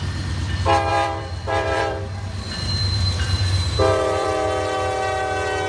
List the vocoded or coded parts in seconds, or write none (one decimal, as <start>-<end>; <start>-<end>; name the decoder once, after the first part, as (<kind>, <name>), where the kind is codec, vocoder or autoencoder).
0.9-4.3 (vocoder, BigVGAN v2)